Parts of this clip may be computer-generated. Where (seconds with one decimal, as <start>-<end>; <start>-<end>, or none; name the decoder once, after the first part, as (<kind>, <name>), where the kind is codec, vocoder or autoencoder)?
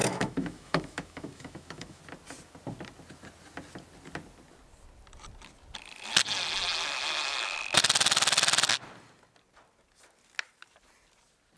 0.0-2.0 (autoencoder, DAC-VAE)